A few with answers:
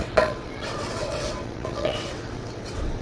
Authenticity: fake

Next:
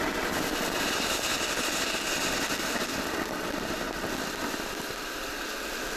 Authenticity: real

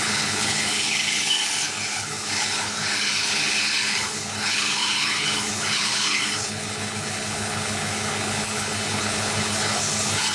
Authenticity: fake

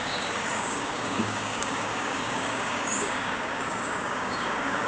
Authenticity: fake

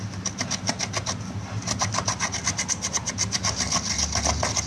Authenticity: real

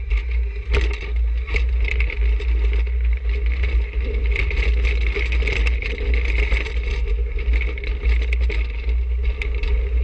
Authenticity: real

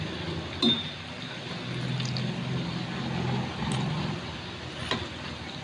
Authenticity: real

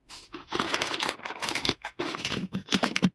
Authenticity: fake